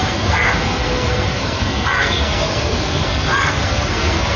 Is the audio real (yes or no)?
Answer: no